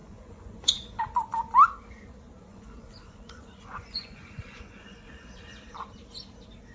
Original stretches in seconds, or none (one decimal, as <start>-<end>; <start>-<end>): 1.0-2.5; 5.4-6.7